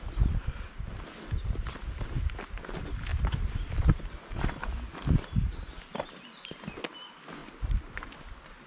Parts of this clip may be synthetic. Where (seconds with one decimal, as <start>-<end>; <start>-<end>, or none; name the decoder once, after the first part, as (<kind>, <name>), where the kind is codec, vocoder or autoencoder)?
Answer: 3.1-4.6 (vocoder, BigVGAN v2); 7.4-8.1